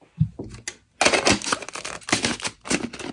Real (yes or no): yes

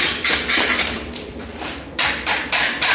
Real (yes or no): no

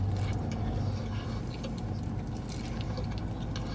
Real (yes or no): yes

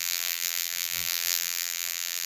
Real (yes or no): no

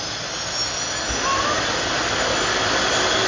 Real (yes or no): yes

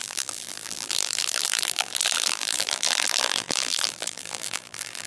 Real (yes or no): no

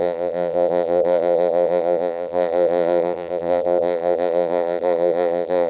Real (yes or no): no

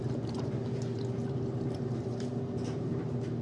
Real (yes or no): no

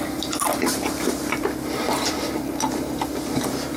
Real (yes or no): no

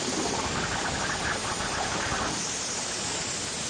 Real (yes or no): yes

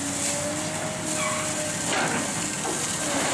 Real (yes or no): yes